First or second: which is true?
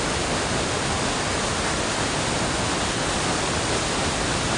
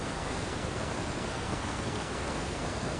first